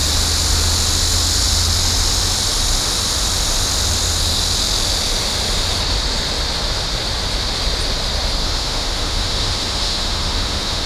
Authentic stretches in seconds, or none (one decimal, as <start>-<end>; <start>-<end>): 0.0-8.4